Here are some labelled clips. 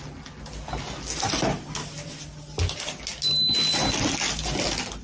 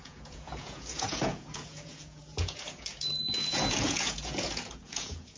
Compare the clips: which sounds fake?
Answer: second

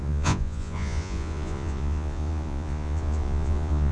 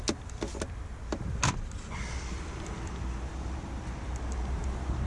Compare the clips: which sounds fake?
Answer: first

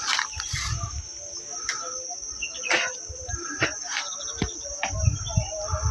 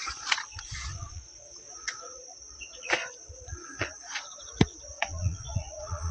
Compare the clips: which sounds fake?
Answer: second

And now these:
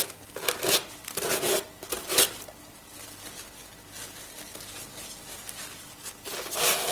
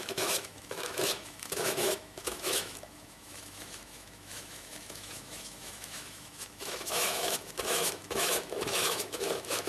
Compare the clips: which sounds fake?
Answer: second